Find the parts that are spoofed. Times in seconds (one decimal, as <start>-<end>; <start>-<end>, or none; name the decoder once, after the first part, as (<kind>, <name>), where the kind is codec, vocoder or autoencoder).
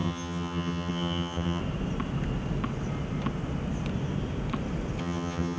0.0-1.6 (vocoder, HiFi-GAN); 5.0-5.6